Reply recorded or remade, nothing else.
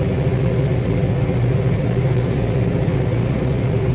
remade